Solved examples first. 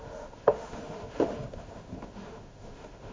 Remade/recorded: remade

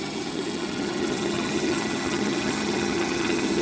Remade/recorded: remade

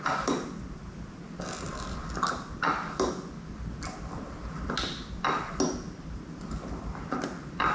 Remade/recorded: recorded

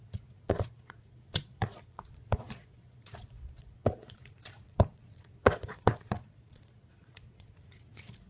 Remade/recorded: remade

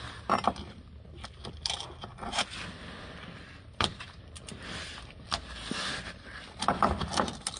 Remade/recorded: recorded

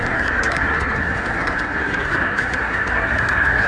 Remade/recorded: remade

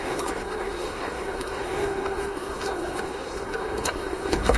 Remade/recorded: remade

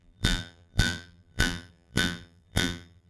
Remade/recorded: remade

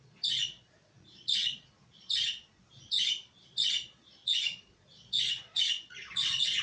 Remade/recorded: remade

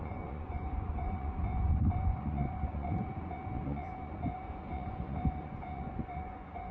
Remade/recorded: remade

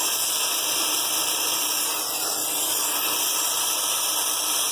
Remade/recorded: recorded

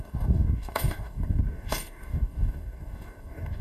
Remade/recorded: remade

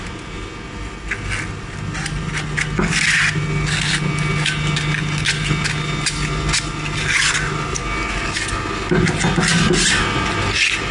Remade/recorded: recorded